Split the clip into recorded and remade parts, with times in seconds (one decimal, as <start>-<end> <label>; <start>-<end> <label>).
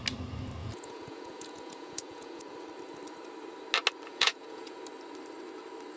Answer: 0.0-0.6 recorded; 0.6-2.4 remade; 2.4-4.1 recorded; 4.1-4.8 remade; 4.8-6.0 recorded